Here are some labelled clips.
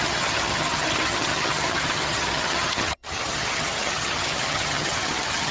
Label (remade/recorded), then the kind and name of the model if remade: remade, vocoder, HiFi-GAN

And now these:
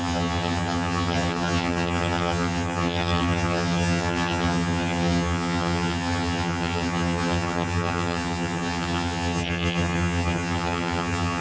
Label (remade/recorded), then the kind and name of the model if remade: remade, vocoder, HiFi-GAN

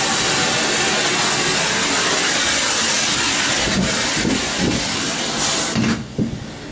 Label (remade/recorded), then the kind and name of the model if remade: recorded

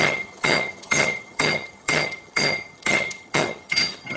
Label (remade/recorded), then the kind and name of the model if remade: remade, vocoder, HiFi-GAN